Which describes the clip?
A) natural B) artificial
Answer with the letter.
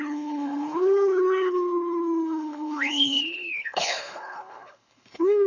B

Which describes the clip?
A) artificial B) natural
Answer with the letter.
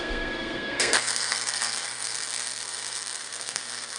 A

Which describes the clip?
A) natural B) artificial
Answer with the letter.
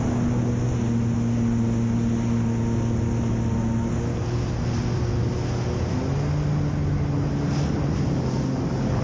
A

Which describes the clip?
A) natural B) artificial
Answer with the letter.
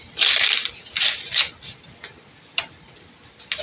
A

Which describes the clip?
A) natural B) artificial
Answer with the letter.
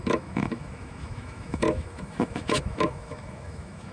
B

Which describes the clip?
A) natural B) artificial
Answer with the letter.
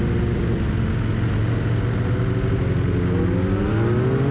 A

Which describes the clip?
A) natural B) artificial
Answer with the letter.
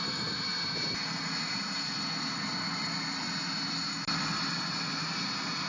A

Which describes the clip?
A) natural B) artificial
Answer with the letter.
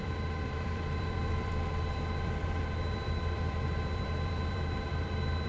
B